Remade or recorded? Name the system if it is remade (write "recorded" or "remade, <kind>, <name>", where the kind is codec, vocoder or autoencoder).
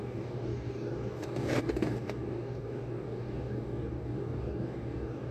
remade, codec, DAC